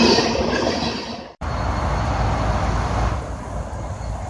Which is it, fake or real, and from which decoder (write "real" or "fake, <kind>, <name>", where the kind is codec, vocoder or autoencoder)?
real